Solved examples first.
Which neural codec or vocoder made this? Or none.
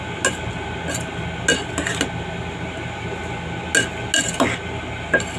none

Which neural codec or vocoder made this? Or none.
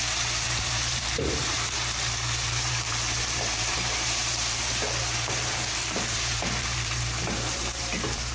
vocoder, BigVGAN v2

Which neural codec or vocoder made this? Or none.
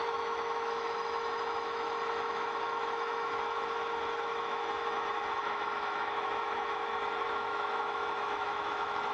autoencoder, DAC-VAE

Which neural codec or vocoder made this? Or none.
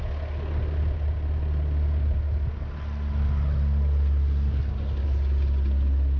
none